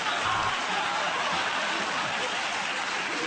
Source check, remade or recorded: recorded